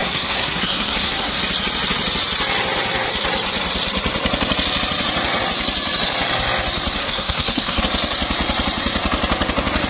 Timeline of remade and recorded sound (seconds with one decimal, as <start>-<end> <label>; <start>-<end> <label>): 0.0-1.4 remade; 1.4-7.0 recorded; 7.0-7.8 remade; 7.8-9.9 recorded